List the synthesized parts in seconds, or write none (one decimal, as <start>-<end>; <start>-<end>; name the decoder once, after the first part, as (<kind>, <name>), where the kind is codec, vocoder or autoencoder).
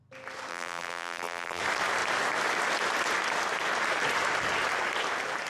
0.5-1.6 (vocoder, BigVGAN v2)